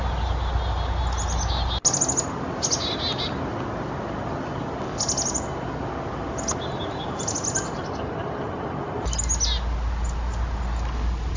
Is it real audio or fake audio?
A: real